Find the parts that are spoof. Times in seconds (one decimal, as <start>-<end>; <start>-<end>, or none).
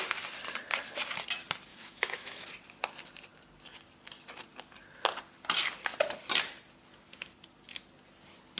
1.7-2.5